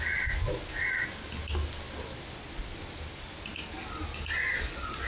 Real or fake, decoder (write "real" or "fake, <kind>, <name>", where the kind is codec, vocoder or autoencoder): real